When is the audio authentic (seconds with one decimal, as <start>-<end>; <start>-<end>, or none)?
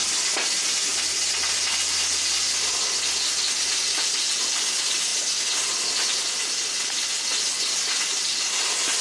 0.0-9.0